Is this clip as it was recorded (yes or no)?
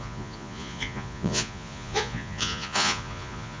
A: no